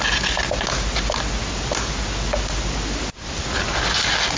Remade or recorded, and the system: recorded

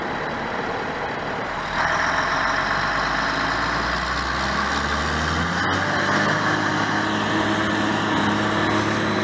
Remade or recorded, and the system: recorded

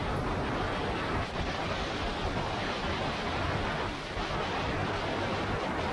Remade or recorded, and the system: recorded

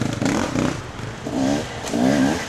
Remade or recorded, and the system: recorded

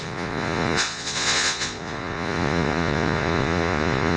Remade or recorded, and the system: remade, vocoder, Vocos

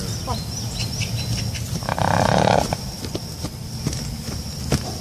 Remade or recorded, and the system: recorded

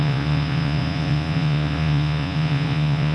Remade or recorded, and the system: remade, vocoder, Vocos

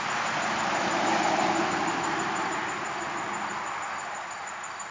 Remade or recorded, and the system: recorded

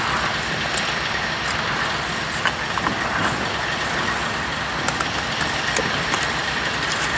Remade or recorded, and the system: recorded